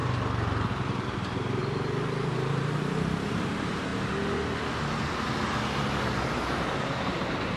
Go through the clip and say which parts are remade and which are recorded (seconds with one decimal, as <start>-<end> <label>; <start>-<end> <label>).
0.0-0.7 recorded; 0.7-1.6 remade; 1.6-2.2 recorded; 2.2-3.9 remade; 3.9-6.2 recorded; 6.2-7.6 remade